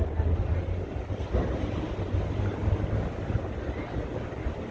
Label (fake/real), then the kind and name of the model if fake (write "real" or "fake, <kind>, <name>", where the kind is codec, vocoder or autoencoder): real